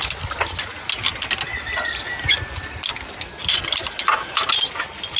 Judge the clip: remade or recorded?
recorded